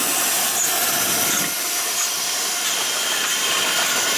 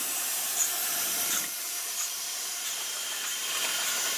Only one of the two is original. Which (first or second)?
first